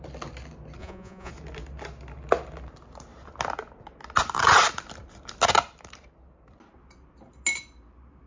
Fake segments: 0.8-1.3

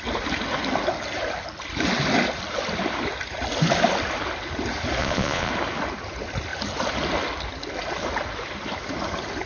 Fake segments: 5.0-5.5

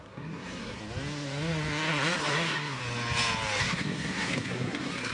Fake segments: 0.0-0.8; 2.2-2.8; 3.6-5.1